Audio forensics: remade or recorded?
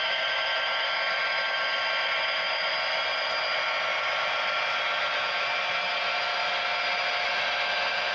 recorded